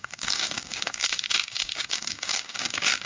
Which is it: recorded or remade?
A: remade